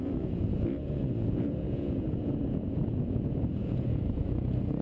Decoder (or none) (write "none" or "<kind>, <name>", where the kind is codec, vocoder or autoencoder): vocoder, Vocos